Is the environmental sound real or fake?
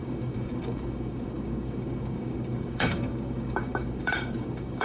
fake